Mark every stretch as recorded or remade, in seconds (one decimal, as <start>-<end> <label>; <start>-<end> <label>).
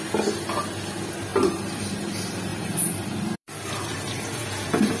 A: 0.0-1.3 recorded; 1.3-1.9 remade; 1.9-2.5 recorded; 2.5-3.7 remade; 3.7-5.0 recorded